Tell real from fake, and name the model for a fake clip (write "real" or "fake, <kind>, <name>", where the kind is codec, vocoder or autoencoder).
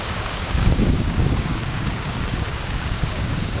fake, codec, DAC